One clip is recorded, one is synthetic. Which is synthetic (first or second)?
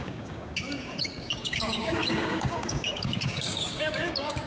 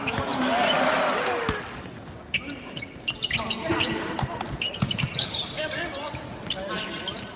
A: first